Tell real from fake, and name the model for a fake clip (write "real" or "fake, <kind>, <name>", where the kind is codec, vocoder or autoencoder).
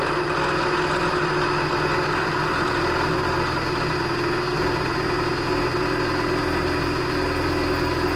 real